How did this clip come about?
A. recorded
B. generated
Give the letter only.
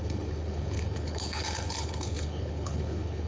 B